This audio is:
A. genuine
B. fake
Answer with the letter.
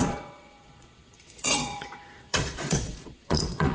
B